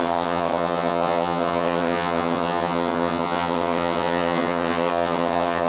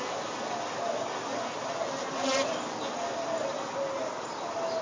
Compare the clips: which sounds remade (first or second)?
first